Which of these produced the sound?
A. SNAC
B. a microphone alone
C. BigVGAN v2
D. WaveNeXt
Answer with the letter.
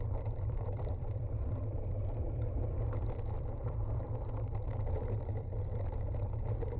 C